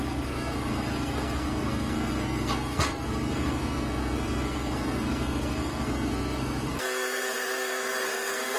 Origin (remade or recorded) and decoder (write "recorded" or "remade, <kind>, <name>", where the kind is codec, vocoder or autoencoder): remade, codec, SNAC